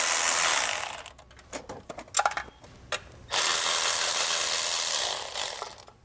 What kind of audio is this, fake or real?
real